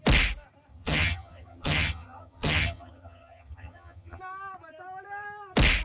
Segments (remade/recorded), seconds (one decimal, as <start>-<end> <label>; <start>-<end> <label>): 0.0-0.7 recorded; 0.7-4.2 remade; 4.2-5.8 recorded